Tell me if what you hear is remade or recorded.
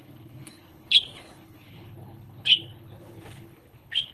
remade